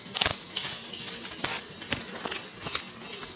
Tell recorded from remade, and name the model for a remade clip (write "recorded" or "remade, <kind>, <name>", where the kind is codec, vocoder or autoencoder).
recorded